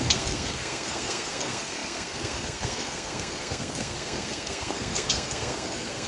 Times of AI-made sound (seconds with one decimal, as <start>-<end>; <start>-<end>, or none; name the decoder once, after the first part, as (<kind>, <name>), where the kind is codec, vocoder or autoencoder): 0.0-6.1 (codec, SNAC)